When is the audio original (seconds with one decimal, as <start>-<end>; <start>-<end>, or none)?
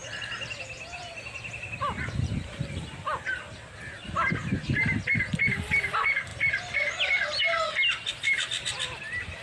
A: 0.0-9.4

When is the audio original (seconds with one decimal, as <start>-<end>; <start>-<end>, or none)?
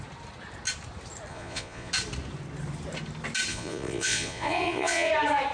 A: 0.0-1.3; 1.9-3.5; 5.1-5.5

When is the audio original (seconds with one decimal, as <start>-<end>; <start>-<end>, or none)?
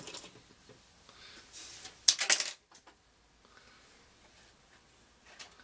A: 0.0-5.6